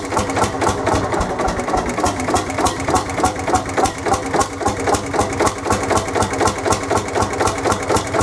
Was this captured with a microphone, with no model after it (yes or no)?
yes